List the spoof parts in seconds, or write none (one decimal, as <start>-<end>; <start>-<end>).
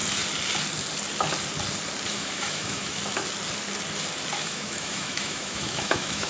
2.1-3.0; 4.4-6.3